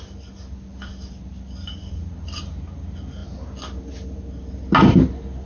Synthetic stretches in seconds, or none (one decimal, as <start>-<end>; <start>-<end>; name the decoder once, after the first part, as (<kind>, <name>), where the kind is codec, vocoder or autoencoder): none